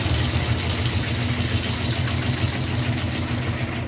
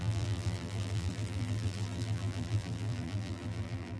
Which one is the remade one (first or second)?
second